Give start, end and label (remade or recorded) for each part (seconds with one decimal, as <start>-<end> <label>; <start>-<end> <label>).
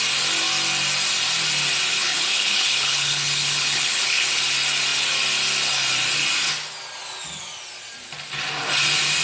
0.0-1.9 recorded; 1.9-4.4 remade; 4.4-9.2 recorded